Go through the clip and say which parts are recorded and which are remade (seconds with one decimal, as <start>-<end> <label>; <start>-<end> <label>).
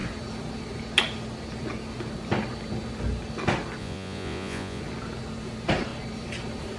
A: 0.0-3.8 recorded; 3.8-4.8 remade; 4.8-6.8 recorded